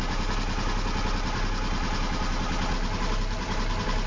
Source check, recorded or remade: recorded